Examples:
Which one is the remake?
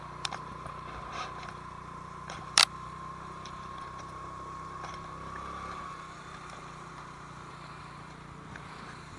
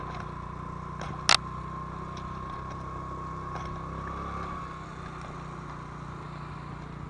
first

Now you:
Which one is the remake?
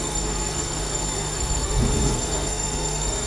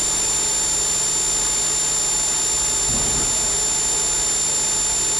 first